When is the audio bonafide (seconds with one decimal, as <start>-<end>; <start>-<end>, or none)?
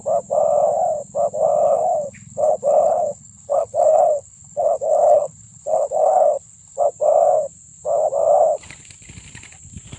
0.0-1.6; 6.8-10.0